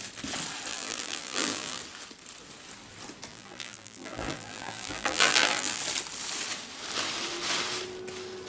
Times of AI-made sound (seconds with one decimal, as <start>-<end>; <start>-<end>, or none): 0.7-1.8; 3.3-5.8